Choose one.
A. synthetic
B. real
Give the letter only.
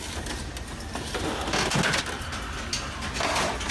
B